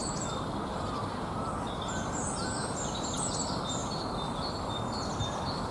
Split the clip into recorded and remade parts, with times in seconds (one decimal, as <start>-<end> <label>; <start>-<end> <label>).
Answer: 0.0-5.7 recorded